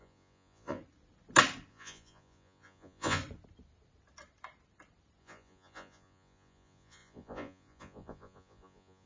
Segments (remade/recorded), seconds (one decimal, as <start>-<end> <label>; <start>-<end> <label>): 0.0-0.8 remade; 0.8-1.7 recorded; 1.7-3.2 remade; 3.2-5.2 recorded; 5.2-9.1 remade